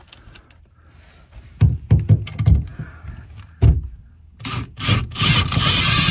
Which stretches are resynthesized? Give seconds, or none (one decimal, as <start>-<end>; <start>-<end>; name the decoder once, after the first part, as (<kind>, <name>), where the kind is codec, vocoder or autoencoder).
none